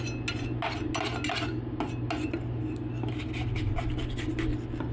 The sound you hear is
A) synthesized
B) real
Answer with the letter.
B